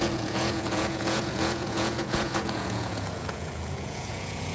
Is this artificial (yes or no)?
yes